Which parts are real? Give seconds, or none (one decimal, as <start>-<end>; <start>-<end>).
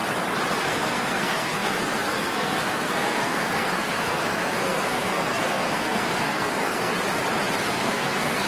0.0-0.6; 6.9-7.7